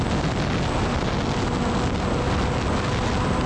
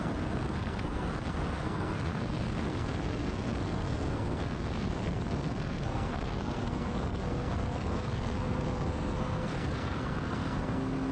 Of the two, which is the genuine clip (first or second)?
first